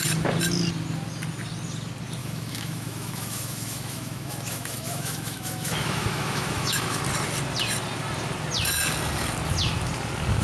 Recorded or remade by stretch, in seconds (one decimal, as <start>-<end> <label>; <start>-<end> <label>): 0.0-2.2 recorded; 2.2-7.0 remade; 7.0-10.4 recorded